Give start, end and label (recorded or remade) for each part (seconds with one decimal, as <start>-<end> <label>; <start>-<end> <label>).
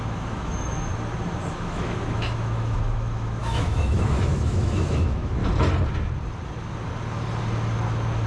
0.0-0.9 remade; 0.9-1.5 recorded; 1.5-5.4 remade; 5.4-8.3 recorded